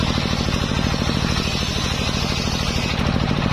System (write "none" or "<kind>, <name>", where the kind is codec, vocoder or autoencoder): none